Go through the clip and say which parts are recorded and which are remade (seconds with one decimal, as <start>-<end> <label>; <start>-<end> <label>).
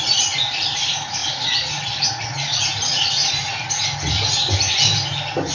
0.0-5.5 recorded